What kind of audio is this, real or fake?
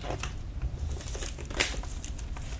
real